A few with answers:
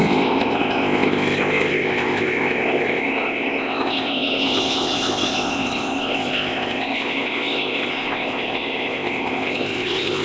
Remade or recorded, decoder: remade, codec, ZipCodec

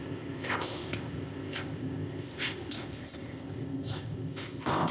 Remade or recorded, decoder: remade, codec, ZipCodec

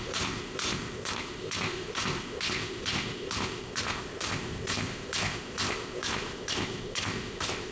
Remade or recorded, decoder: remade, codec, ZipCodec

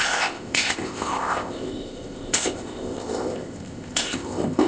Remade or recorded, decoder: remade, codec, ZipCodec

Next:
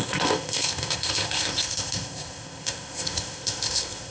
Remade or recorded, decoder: remade, codec, ZipCodec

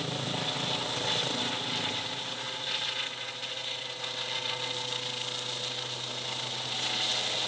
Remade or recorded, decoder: recorded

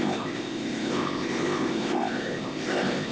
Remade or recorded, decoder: remade, codec, ZipCodec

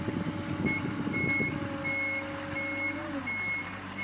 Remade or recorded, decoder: recorded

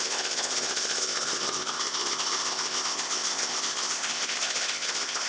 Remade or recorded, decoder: remade, codec, ZipCodec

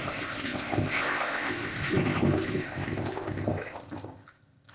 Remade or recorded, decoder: remade, codec, ZipCodec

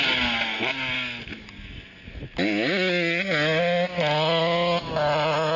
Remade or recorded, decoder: recorded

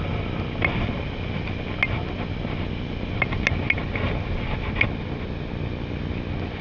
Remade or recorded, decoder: recorded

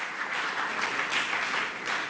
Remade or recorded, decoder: recorded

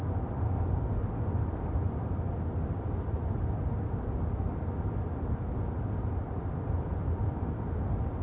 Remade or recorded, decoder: recorded